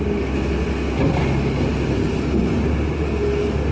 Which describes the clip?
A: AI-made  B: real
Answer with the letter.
B